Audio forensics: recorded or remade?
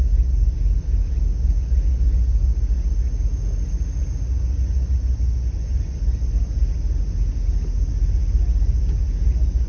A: recorded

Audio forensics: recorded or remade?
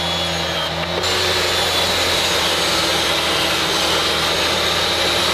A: recorded